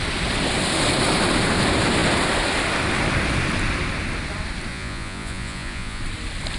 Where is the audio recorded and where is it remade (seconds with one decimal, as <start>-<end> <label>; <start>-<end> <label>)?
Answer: 0.0-4.7 recorded; 4.7-6.0 remade; 6.0-6.6 recorded